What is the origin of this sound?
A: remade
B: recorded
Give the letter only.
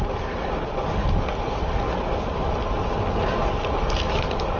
B